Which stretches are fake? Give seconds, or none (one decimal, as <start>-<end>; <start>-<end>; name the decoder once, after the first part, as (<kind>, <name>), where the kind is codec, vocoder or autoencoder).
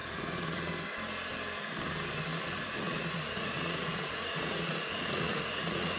0.0-0.7 (vocoder, Vocos); 2.3-6.0